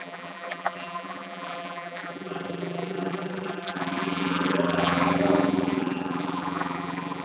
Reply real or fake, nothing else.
fake